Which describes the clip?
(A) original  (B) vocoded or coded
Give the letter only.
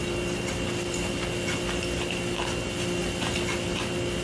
A